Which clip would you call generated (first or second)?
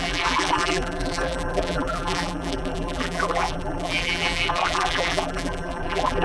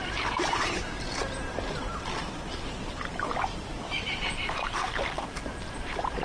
first